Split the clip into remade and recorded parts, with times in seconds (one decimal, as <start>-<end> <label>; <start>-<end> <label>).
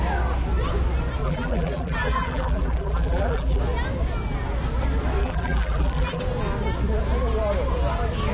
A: 0.0-1.2 recorded; 1.2-3.6 remade; 3.6-5.2 recorded; 5.2-6.2 remade; 6.2-8.3 recorded